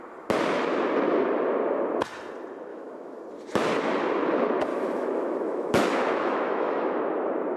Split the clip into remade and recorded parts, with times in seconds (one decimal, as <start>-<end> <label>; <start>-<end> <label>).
0.0-2.7 recorded; 2.7-3.2 remade; 3.2-4.7 recorded; 4.7-7.0 remade; 7.0-7.6 recorded